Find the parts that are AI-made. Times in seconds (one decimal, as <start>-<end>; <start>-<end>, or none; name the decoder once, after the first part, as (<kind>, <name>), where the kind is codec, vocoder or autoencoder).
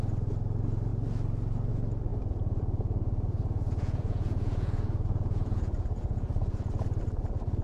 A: 2.1-6.7 (vocoder, Vocos)